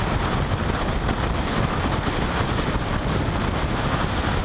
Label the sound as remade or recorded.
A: recorded